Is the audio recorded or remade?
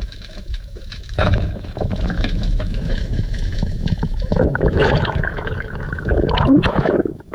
remade